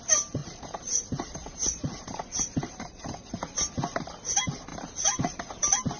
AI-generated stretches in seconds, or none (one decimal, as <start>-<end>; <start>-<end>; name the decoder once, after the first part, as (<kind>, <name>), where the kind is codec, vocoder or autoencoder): 0.4-3.3 (vocoder, BigVGAN v2); 4.7-5.6